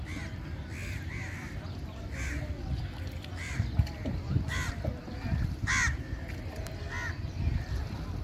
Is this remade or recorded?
recorded